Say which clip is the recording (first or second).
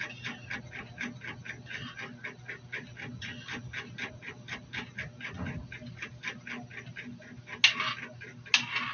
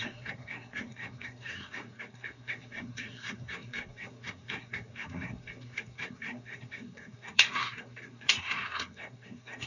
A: first